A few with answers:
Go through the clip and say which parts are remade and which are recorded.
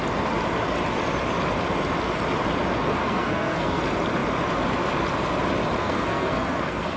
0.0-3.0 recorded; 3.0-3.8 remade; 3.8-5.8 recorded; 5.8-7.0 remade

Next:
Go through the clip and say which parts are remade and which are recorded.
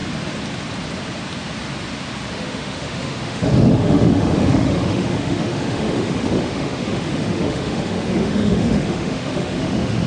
0.0-2.3 recorded; 2.3-10.1 remade